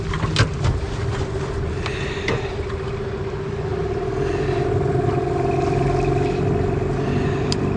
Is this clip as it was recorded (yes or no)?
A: yes